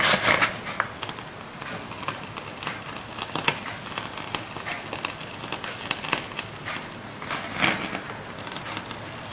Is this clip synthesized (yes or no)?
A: no